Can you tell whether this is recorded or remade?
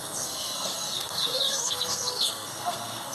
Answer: remade